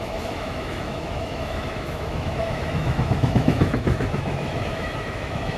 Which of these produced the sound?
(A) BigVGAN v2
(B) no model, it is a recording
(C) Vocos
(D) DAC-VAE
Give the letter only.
D